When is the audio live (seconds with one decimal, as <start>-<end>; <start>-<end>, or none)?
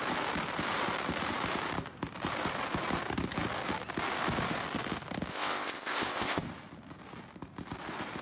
0.0-5.3; 6.4-8.2